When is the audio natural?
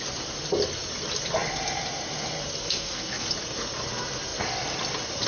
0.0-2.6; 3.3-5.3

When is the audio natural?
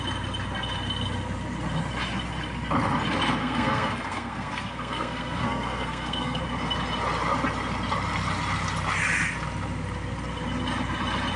0.0-3.4; 6.4-11.4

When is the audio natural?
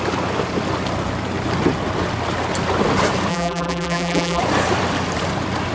0.0-3.3; 4.4-5.7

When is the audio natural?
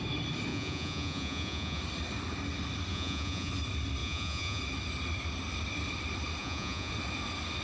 0.0-0.5; 1.8-2.9; 3.5-4.0; 4.6-6.4; 6.9-7.6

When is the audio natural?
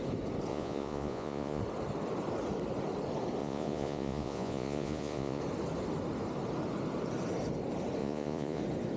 0.0-0.5; 1.6-3.4; 5.4-8.0; 8.6-9.0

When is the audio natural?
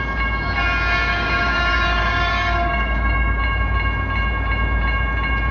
0.0-1.0; 3.4-5.5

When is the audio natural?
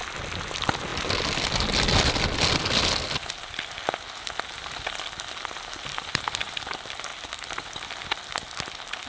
0.0-9.1